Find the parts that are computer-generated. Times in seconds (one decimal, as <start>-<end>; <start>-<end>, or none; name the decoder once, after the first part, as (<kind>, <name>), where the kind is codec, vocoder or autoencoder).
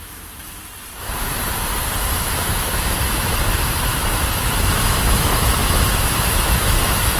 0.0-0.6 (autoencoder, DAC-VAE); 2.0-7.2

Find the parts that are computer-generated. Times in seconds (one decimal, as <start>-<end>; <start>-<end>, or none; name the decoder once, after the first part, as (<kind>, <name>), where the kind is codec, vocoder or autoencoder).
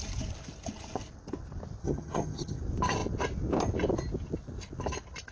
1.8-2.6 (vocoder, HiFi-GAN)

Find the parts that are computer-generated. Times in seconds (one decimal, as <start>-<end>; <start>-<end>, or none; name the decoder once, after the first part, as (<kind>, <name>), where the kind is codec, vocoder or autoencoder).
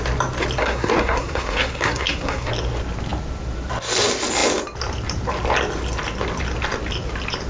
0.6-2.5 (codec, SNAC)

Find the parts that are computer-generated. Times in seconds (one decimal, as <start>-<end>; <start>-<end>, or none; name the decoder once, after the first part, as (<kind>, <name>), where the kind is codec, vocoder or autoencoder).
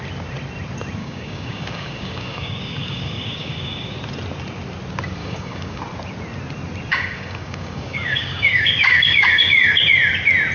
1.0-4.0 (codec, DAC); 5.2-5.8; 6.9-9.8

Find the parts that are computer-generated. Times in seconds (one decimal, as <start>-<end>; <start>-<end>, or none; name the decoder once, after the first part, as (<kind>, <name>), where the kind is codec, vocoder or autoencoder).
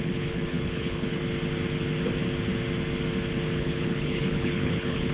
0.0-1.2 (codec, HILCodec); 3.6-5.1